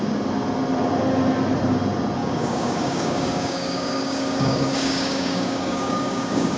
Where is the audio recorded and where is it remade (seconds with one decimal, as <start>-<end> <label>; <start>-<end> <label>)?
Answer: 0.0-2.2 recorded; 2.2-6.6 remade